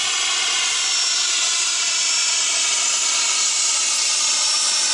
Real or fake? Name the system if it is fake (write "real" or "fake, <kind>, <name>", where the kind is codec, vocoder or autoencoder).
real